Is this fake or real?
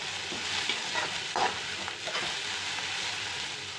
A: real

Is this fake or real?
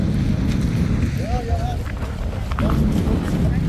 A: real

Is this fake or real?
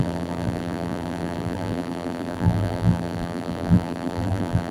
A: fake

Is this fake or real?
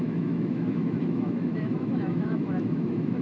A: fake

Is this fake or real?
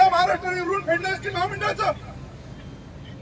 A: real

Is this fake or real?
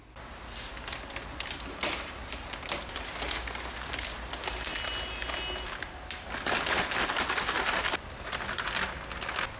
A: real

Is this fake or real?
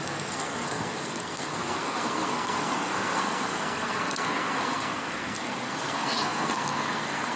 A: fake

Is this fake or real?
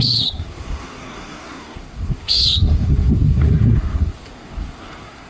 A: fake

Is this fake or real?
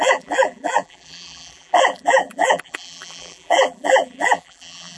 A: fake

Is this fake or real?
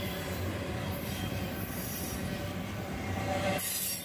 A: fake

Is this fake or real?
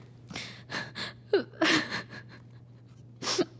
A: real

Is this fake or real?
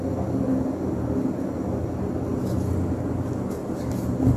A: real